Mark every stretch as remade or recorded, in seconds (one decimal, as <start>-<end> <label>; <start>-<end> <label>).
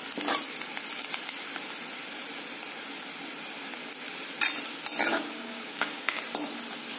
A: 0.0-5.1 recorded; 5.1-6.2 remade; 6.2-7.0 recorded